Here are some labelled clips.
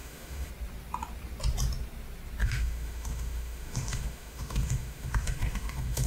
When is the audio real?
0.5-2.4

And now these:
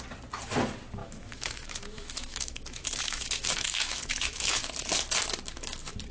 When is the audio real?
0.0-1.0; 4.7-6.1

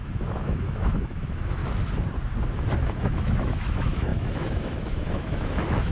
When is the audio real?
1.6-2.8

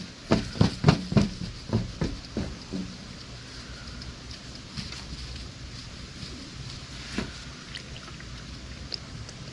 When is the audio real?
0.0-9.5

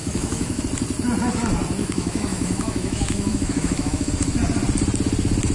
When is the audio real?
0.6-1.8; 4.1-5.5

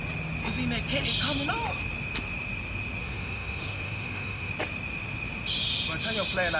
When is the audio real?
0.0-3.0; 4.5-6.6

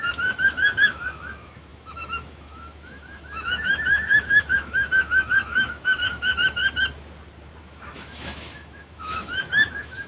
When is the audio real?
6.6-7.6